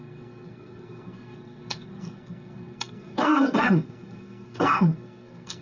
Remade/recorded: remade